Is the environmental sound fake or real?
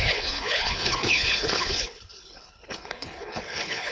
fake